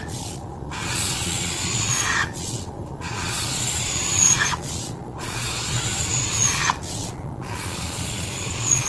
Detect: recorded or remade remade